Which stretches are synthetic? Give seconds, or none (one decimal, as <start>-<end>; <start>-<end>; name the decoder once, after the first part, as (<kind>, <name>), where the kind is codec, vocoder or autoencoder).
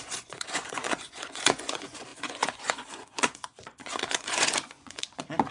0.0-5.5 (vocoder, Vocos)